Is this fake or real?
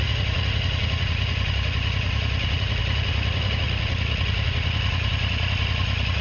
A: fake